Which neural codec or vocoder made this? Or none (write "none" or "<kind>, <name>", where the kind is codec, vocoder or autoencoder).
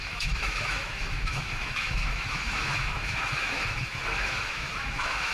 autoencoder, DAC-VAE